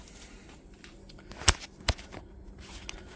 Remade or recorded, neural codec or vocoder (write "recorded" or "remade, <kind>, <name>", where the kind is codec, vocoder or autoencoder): recorded